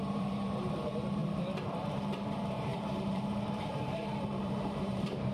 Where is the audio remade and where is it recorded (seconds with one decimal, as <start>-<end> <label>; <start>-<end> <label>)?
0.0-5.3 remade